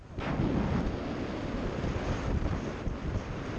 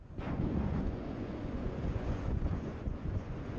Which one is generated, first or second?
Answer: second